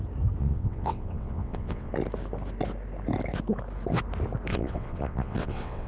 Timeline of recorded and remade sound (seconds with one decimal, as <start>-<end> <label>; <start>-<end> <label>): 0.0-0.4 recorded; 0.4-1.9 remade; 1.9-4.5 recorded; 4.5-5.9 remade